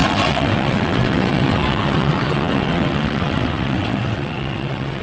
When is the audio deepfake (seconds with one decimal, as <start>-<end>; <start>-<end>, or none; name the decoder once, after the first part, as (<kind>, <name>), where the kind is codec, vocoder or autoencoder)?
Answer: 0.0-5.0 (vocoder, WaveNeXt)